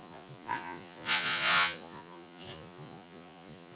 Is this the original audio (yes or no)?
no